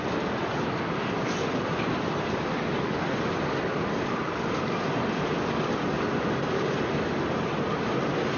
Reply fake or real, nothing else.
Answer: real